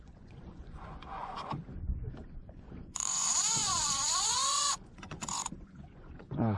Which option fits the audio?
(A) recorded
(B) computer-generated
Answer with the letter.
B